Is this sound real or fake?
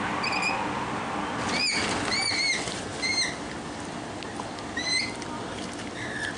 real